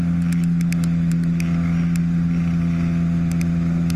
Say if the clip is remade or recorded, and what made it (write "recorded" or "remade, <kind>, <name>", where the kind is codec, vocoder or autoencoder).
recorded